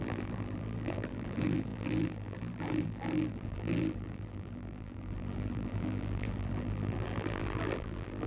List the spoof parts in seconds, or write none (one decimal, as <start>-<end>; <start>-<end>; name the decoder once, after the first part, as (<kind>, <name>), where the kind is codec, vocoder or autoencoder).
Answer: 0.0-8.3 (vocoder, BigVGAN v2)

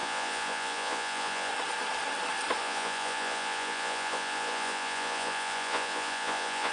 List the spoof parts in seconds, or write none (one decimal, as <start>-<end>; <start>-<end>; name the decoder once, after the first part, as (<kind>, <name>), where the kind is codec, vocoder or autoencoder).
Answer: 0.0-1.5 (vocoder, Vocos); 2.6-6.7

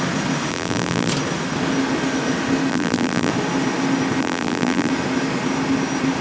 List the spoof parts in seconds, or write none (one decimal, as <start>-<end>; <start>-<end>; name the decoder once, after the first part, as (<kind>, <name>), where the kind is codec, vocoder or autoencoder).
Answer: 0.5-1.1 (vocoder, BigVGAN v2); 2.7-3.3; 4.2-4.9